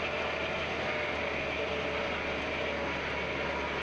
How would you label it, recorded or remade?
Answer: recorded